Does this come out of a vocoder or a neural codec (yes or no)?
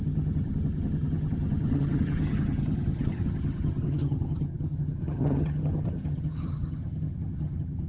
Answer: yes